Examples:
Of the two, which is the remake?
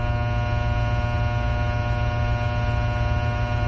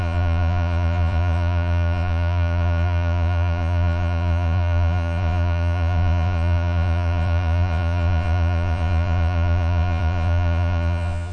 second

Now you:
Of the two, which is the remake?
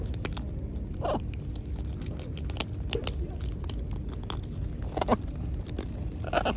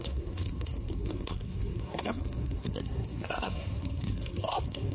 second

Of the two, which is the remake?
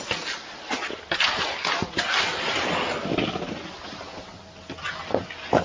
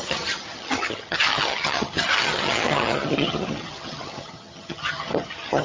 second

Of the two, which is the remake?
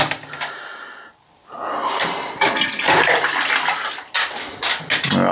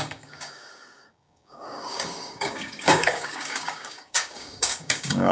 second